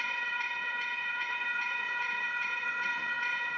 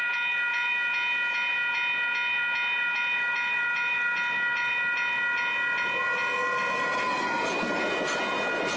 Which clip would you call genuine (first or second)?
second